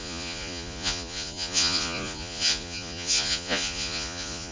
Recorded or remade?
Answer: remade